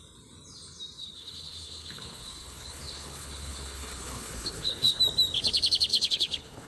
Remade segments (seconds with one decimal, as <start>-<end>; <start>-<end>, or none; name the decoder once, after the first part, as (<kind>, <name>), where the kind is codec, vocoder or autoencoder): 1.0-5.0 (codec, HILCodec); 5.9-6.7

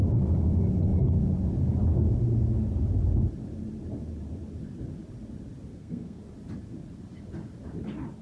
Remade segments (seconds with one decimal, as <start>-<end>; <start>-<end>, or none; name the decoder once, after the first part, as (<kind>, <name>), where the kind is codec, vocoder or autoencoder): 5.7-6.2 (codec, SNAC)

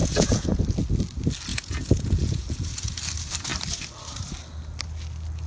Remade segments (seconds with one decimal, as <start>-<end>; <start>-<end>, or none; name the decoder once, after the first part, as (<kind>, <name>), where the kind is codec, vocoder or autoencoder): 0.0-0.6 (vocoder, Vocos); 1.5-3.0

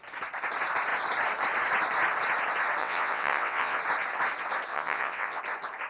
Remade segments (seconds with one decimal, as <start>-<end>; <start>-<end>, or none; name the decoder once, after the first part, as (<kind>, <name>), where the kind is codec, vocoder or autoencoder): 2.8-3.8 (vocoder, WaveNeXt); 4.7-5.4